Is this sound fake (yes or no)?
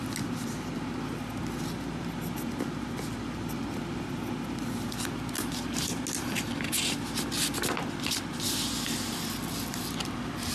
no